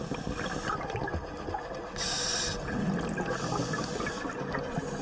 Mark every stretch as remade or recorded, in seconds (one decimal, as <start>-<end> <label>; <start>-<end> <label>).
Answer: 0.0-5.0 recorded